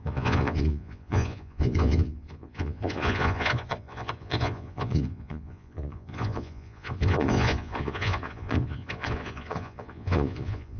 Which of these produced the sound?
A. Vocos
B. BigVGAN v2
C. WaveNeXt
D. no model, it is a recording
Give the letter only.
A